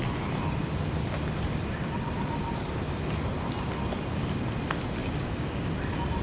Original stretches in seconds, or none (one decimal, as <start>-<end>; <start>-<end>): 0.0-5.0; 5.7-6.2